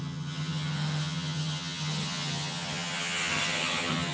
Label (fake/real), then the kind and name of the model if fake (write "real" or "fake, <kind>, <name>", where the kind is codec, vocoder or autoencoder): fake, vocoder, HiFi-GAN